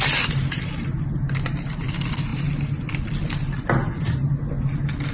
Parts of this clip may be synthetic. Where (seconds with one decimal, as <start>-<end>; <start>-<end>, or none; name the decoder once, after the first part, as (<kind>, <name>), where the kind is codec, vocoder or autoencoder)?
2.3-2.9 (vocoder, BigVGAN v2)